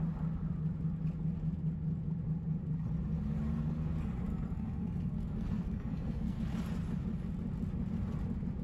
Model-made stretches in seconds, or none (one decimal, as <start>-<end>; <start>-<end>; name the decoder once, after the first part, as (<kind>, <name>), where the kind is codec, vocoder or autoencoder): 4.3-6.4 (codec, SNAC)